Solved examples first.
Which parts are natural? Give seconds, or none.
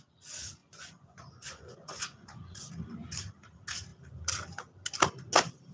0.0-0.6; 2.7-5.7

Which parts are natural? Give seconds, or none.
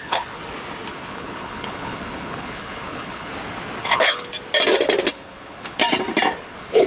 0.4-0.9; 3.3-3.8; 4.3-5.1; 5.8-6.4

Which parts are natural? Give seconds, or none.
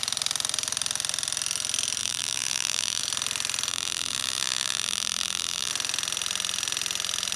0.0-2.0; 3.0-3.7; 5.7-7.4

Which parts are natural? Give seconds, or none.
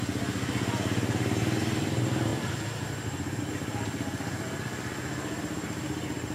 0.0-6.3